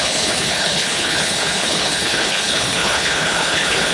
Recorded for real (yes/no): no